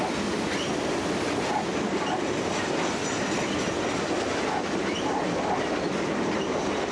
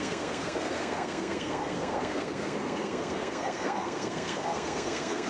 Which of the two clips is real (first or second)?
first